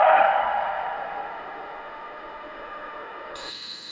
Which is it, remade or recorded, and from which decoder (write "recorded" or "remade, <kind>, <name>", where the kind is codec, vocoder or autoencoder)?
remade, autoencoder, DAC-VAE